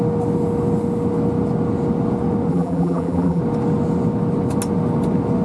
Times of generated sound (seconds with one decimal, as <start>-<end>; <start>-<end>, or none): 2.5-3.4